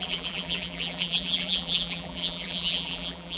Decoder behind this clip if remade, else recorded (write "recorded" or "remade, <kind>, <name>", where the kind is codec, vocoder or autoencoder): remade, vocoder, BigVGAN v2